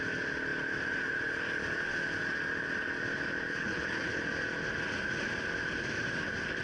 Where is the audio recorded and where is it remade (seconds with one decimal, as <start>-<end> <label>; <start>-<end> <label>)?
0.0-3.5 recorded; 3.5-4.2 remade; 4.2-6.6 recorded